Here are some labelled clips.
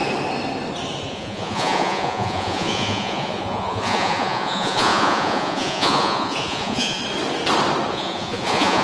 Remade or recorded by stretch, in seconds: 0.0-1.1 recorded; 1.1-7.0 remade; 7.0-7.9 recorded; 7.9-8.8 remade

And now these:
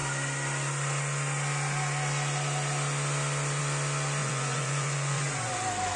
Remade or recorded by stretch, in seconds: 0.0-4.2 recorded; 4.2-5.5 remade; 5.5-6.0 recorded

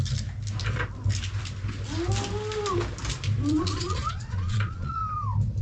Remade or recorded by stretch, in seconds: 0.0-3.5 recorded; 3.5-5.0 remade; 5.0-5.6 recorded